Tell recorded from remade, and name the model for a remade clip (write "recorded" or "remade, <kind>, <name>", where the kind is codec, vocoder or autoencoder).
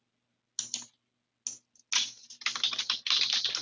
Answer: recorded